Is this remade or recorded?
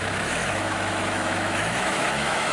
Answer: remade